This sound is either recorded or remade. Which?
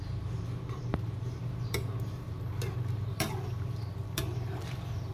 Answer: remade